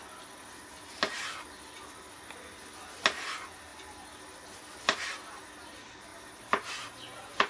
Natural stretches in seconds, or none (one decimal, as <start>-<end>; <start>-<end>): 0.0-7.5